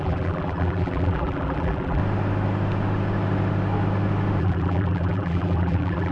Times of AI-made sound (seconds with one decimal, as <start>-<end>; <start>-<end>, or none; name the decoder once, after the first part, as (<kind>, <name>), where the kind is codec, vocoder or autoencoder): 0.0-2.0 (vocoder, BigVGAN v2); 4.4-6.1